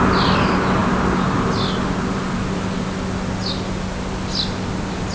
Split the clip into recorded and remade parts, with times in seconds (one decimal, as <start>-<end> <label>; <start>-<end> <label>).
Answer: 0.0-5.1 recorded